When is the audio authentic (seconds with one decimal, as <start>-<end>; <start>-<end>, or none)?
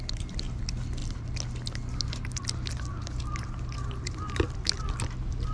0.0-5.5